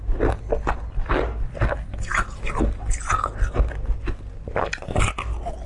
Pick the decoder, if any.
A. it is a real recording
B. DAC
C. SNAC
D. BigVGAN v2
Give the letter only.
A